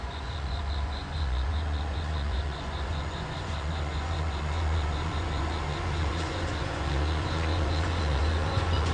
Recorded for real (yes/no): no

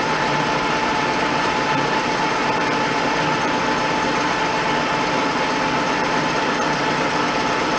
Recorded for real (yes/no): no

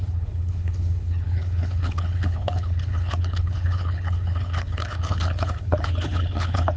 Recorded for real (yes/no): no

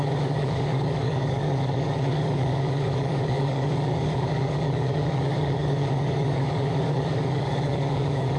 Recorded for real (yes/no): no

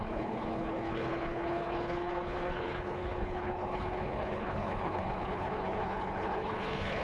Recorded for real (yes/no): no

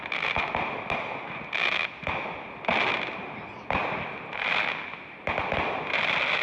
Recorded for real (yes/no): yes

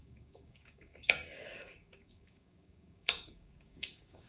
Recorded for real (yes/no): no